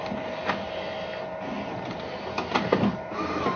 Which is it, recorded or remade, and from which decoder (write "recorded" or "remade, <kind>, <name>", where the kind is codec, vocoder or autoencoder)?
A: recorded